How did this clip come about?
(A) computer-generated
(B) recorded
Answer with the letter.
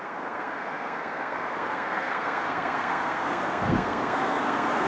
A